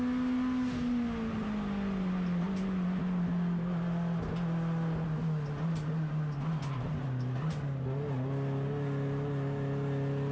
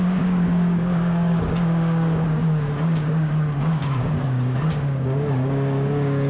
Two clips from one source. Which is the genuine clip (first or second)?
first